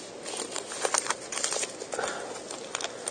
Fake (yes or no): no